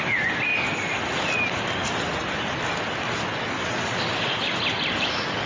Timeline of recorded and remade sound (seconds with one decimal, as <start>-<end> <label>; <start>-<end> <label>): 0.0-5.5 recorded